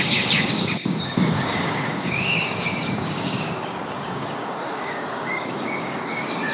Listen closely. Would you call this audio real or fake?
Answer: fake